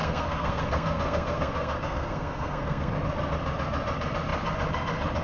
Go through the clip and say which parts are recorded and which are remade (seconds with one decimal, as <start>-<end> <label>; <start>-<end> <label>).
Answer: 0.0-2.9 remade; 2.9-5.2 recorded